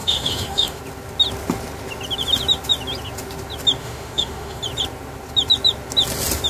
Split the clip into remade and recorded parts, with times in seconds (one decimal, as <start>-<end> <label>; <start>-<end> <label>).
0.0-0.8 remade; 0.8-3.8 recorded; 3.8-4.6 remade; 4.6-6.5 recorded